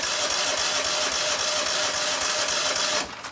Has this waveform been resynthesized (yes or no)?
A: no